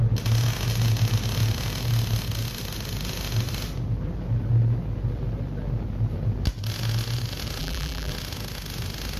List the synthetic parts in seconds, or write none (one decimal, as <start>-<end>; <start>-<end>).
7.6-8.1